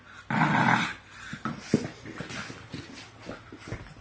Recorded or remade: recorded